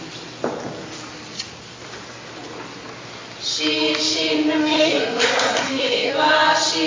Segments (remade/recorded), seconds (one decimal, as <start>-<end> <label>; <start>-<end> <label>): 0.0-4.6 recorded; 4.6-6.1 remade; 6.1-6.9 recorded